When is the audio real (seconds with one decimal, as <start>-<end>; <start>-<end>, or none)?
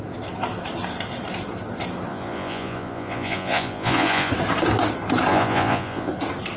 0.0-2.1; 4.3-5.3; 6.1-6.6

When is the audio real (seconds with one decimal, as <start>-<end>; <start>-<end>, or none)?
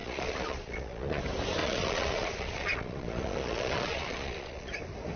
1.2-1.6; 4.7-5.2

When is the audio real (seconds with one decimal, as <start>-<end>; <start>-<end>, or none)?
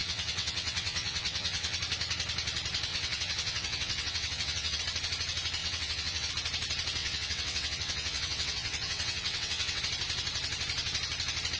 1.8-2.9; 4.8-5.6; 6.3-7.0; 9.8-11.6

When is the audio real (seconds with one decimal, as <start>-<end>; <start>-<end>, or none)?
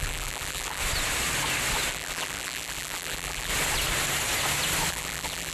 0.8-1.9; 3.5-4.9